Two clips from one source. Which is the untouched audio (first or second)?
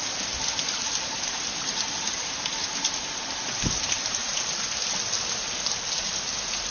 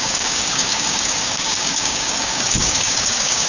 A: first